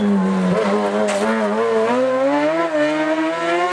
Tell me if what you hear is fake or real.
real